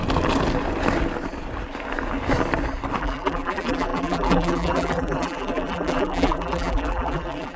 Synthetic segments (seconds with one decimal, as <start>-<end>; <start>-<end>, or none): 3.0-7.6